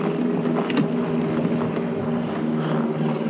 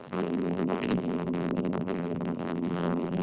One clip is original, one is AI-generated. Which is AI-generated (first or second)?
second